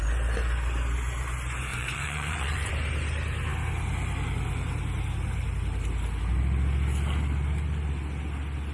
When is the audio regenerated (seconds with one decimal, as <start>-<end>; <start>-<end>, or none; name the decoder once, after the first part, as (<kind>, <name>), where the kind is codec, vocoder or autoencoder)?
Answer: 1.7-2.7 (vocoder, Vocos)